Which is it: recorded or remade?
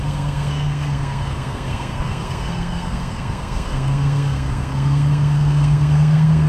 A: remade